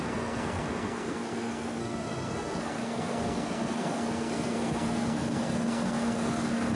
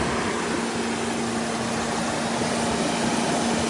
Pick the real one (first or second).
second